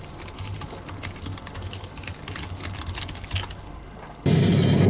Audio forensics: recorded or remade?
recorded